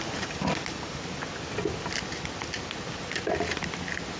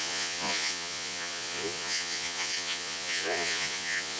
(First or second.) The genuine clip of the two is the first